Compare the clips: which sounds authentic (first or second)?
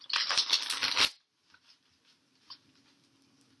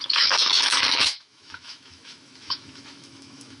first